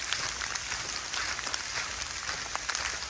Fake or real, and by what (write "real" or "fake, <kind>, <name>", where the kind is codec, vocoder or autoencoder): real